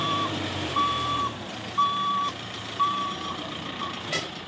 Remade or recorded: remade